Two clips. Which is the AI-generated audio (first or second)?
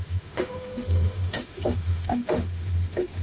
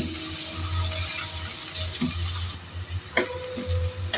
first